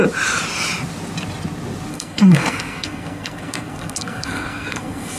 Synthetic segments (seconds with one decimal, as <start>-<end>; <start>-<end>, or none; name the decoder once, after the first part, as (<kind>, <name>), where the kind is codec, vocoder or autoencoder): 1.9-5.2 (codec, SNAC)